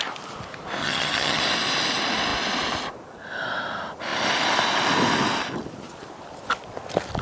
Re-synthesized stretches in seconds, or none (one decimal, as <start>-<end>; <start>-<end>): 0.8-1.4